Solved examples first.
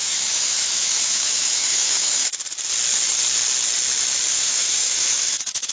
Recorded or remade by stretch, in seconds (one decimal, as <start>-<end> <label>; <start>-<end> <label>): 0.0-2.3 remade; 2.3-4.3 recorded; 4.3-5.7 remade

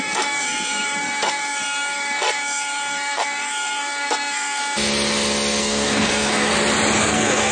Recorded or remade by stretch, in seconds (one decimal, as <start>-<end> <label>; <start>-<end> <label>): 0.0-4.6 remade; 4.6-5.6 recorded; 5.6-6.5 remade; 6.5-7.0 recorded; 7.0-7.5 remade

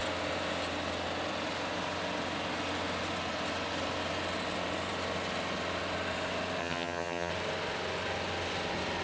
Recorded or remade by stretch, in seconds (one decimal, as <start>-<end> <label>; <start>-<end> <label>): 0.0-6.6 recorded; 6.6-7.3 remade; 7.3-9.0 recorded